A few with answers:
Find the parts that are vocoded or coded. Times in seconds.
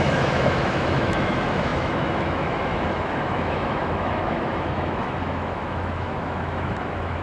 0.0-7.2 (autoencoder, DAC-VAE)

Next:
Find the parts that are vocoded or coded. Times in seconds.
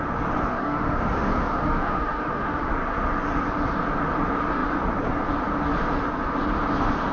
0.5-2.7 (autoencoder, DAC-VAE)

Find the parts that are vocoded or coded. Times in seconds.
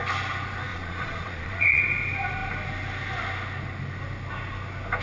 0.7-1.8 (vocoder, Vocos)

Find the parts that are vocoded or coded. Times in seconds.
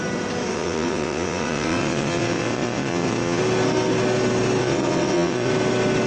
0.5-3.4 (vocoder, WaveNeXt); 4.6-5.5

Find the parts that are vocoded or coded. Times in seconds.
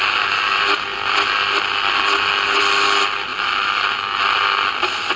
none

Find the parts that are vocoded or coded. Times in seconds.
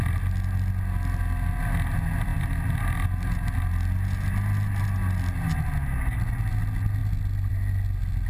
none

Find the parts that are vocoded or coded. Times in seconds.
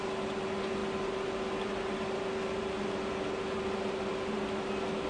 none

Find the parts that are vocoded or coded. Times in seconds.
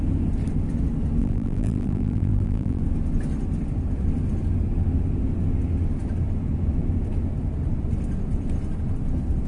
1.2-2.8 (vocoder, BigVGAN v2)